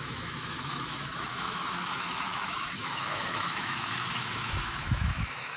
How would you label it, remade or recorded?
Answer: remade